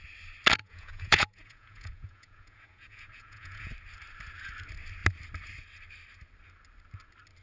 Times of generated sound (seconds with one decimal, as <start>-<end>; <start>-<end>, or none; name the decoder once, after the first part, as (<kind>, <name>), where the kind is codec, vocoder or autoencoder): 0.6-3.7 (vocoder, Vocos)